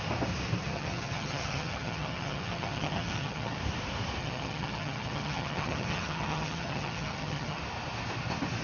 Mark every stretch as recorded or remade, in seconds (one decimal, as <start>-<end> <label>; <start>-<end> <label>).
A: 0.0-0.6 recorded; 0.6-3.6 remade; 3.6-4.2 recorded; 4.2-7.6 remade; 7.6-8.6 recorded

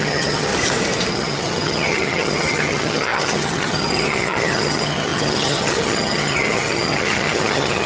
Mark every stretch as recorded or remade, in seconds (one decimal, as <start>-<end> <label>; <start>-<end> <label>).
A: 0.0-0.5 remade; 0.5-1.1 recorded; 1.1-7.9 remade

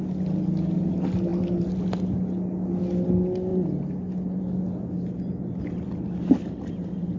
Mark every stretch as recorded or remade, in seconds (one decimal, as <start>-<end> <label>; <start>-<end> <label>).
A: 0.0-7.2 recorded

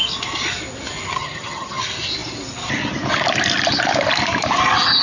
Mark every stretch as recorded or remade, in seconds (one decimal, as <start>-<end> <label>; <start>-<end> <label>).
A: 0.0-1.2 recorded; 1.2-1.8 remade; 1.8-5.0 recorded

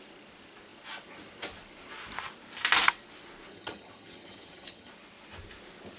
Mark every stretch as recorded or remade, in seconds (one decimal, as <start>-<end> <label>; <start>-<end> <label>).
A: 0.0-3.5 recorded; 3.5-4.9 remade; 4.9-6.0 recorded

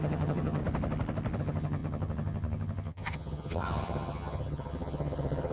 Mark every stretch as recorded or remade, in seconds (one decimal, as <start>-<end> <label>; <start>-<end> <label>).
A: 0.0-0.6 remade; 0.6-1.4 recorded; 1.4-5.5 remade